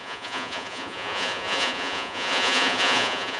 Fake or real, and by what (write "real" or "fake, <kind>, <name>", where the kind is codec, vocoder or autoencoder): fake, vocoder, Vocos